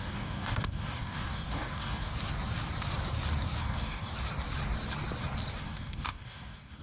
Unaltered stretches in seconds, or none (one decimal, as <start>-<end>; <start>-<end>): 2.1-3.6; 4.1-5.6